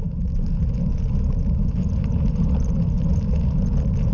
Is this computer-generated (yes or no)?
no